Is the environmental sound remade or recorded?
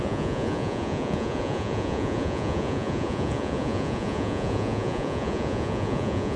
remade